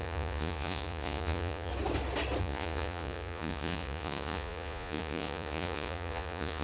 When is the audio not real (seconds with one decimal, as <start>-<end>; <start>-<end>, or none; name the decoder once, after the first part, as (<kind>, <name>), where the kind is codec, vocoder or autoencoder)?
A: 0.0-1.7 (vocoder, Vocos); 2.4-6.6